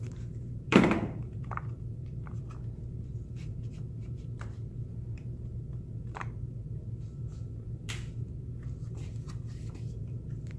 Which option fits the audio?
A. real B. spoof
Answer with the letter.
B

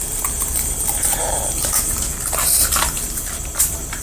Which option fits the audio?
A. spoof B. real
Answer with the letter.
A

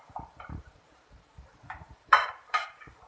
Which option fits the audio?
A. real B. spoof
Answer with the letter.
B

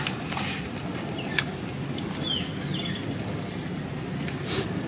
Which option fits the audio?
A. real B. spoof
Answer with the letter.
A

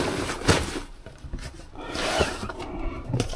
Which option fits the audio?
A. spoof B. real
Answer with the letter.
A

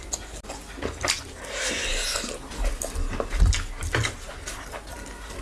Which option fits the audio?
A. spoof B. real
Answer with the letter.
B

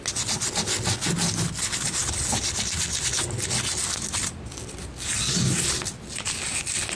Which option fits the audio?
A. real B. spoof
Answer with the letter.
A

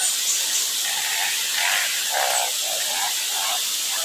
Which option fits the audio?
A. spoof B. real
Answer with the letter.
B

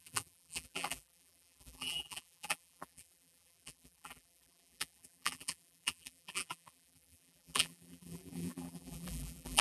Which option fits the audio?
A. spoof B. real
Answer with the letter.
A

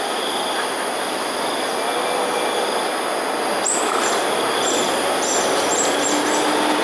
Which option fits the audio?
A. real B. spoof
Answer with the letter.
A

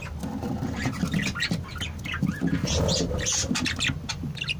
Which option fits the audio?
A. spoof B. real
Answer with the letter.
B